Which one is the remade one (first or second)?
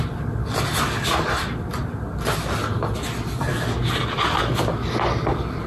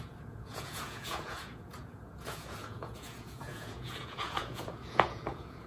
second